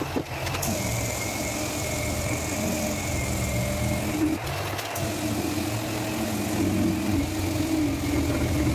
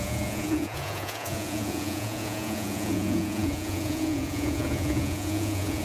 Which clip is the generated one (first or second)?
second